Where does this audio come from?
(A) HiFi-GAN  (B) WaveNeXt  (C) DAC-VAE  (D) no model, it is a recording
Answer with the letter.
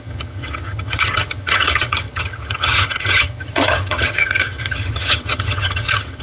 A